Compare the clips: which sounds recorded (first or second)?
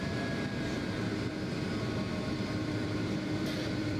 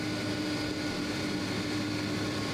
second